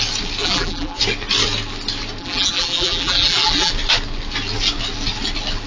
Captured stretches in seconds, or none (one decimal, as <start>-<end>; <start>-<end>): 0.0-0.4; 1.0-2.2; 3.7-5.7